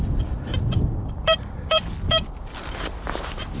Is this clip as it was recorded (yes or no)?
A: no